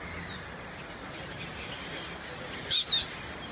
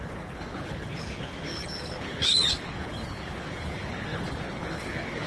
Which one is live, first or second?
first